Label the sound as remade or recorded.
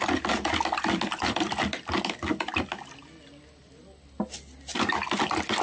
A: recorded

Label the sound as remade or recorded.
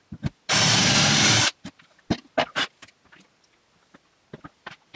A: recorded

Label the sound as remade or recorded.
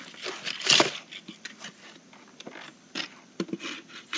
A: recorded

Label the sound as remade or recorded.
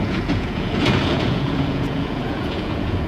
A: remade